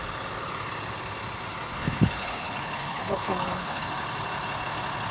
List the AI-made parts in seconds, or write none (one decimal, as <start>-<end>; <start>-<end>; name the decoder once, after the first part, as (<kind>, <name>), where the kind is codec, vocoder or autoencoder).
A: 1.7-3.9 (codec, HILCodec)